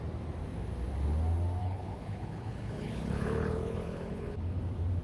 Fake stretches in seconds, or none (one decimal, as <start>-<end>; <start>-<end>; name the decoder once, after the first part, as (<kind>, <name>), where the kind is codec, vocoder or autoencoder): 1.6-4.6 (codec, HILCodec)